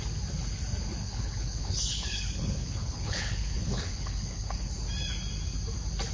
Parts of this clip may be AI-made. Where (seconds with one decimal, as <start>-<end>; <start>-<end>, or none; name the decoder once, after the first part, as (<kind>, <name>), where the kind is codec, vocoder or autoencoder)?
1.0-4.7 (codec, HILCodec)